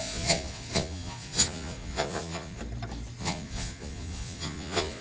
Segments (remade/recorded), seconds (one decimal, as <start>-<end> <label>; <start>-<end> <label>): 0.0-2.6 remade; 2.6-3.2 recorded; 3.2-5.0 remade